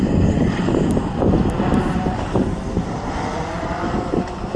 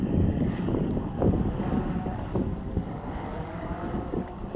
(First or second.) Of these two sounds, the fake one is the second